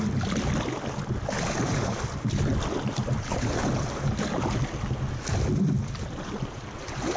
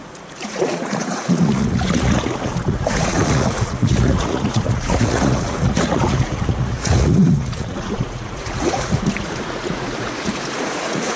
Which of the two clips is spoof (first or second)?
second